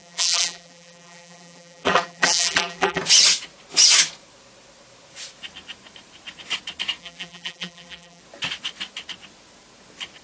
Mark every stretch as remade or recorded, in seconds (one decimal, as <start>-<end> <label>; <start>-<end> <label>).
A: 0.0-3.0 remade; 3.0-7.0 recorded; 7.0-8.2 remade; 8.2-10.2 recorded